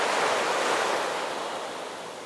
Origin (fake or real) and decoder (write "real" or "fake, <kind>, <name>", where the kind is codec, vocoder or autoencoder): real